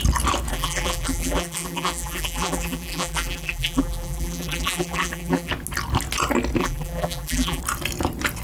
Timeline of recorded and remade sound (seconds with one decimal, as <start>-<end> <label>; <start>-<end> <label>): 0.0-0.5 recorded; 0.5-5.5 remade; 5.5-6.6 recorded; 6.6-7.6 remade; 7.6-8.4 recorded